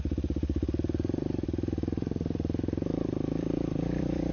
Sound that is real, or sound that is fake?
fake